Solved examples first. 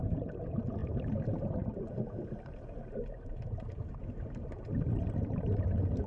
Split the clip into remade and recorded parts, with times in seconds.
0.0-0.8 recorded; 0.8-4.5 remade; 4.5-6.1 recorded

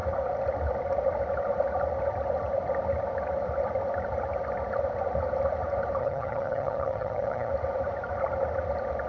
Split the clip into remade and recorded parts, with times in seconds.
0.0-6.0 recorded; 6.0-7.5 remade; 7.5-9.1 recorded

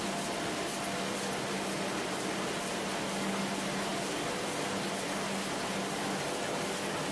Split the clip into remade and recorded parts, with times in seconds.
0.0-7.1 recorded

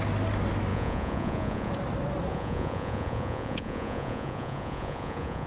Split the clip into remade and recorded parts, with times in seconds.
0.0-0.7 recorded; 0.7-1.7 remade; 1.7-2.3 recorded; 2.3-5.5 remade

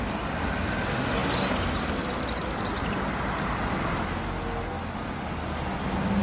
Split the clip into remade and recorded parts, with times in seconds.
0.0-6.2 recorded

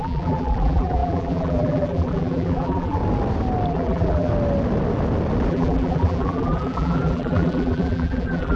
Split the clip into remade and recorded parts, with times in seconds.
0.0-3.0 remade; 3.0-3.7 recorded; 3.7-4.3 remade; 4.3-5.5 recorded; 5.5-8.6 remade

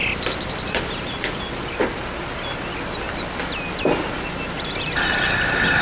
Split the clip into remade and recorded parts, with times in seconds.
0.0-1.8 remade; 1.8-3.8 recorded; 3.8-5.8 remade

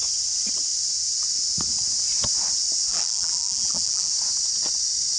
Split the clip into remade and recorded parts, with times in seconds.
0.0-2.9 recorded; 2.9-4.1 remade; 4.1-5.2 recorded